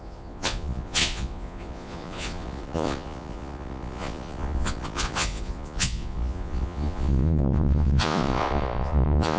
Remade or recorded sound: remade